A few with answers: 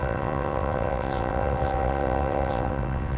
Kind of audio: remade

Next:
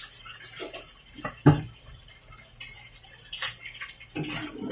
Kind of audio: recorded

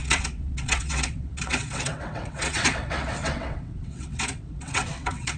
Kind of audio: remade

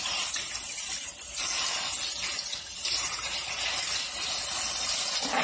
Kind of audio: recorded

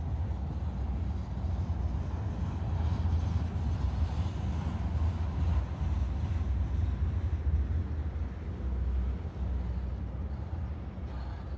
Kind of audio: recorded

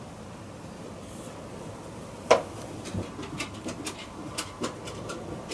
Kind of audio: recorded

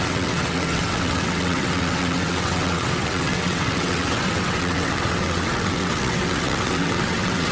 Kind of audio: remade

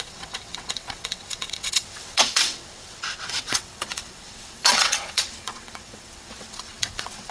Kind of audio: remade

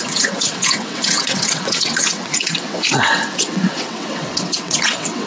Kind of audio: remade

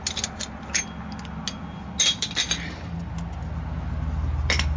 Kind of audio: recorded